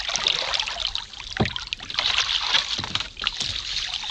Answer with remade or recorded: recorded